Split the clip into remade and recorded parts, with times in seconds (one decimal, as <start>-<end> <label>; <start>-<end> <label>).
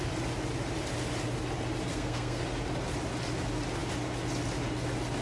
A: 0.0-1.9 recorded; 1.9-2.4 remade; 2.4-5.2 recorded